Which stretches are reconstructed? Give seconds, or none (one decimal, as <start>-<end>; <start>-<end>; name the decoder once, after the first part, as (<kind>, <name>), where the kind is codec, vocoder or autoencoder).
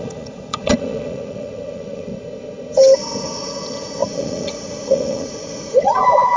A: 0.0-2.1 (vocoder, Vocos); 3.2-6.4